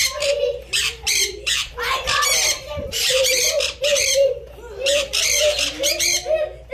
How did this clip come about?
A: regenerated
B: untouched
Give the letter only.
A